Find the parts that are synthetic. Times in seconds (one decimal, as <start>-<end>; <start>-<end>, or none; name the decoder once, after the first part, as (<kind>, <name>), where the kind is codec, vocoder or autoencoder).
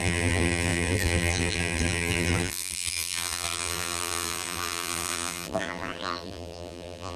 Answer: 0.0-7.2 (vocoder, BigVGAN v2)